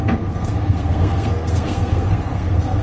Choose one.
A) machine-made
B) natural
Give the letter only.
A